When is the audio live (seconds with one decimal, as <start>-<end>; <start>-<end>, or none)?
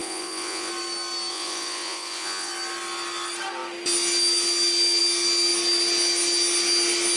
0.7-1.3; 2.5-7.2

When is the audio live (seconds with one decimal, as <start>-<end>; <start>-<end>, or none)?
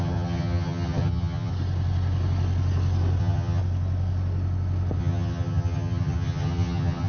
1.5-3.2; 3.6-5.0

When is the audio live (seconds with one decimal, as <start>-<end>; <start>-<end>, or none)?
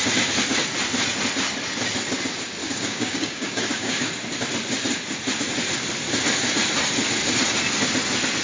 0.0-2.6; 4.1-8.4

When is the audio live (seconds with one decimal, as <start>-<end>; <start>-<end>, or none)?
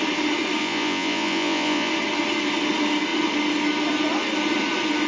0.0-0.6; 1.9-5.1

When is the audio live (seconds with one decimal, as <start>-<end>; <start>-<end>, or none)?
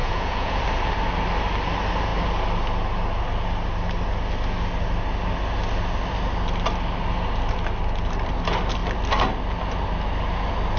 0.6-10.8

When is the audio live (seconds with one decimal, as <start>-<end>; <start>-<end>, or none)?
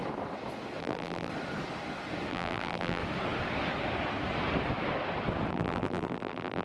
0.0-0.8; 1.3-2.3; 3.0-5.5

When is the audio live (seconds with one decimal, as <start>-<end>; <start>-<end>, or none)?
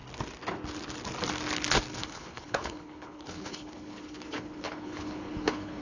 0.0-2.0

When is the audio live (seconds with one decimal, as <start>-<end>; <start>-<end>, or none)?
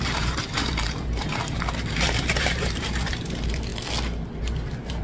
3.7-4.4